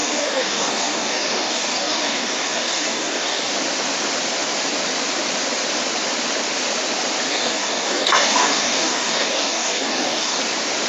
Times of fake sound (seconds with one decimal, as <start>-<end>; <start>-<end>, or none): 0.0-3.5; 7.3-10.4